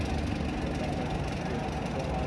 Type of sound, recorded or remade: recorded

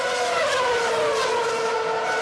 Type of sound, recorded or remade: recorded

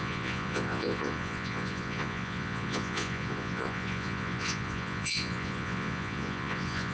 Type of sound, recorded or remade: remade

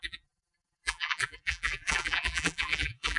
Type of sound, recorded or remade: remade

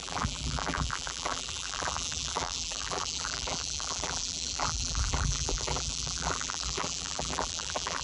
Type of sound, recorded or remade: remade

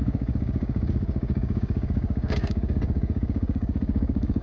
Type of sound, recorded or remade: remade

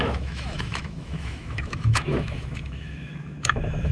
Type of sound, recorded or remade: remade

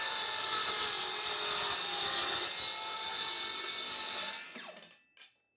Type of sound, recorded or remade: recorded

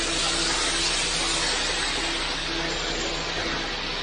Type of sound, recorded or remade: recorded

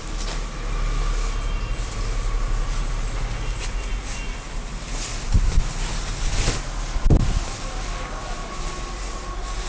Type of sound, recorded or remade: recorded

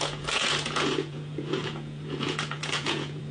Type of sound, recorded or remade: remade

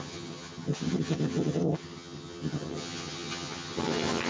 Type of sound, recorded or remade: remade